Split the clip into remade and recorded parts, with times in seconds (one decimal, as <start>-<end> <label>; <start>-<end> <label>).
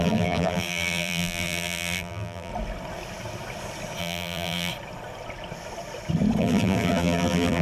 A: 0.0-2.5 remade; 2.5-4.0 recorded; 4.0-4.7 remade; 4.7-6.4 recorded; 6.4-7.6 remade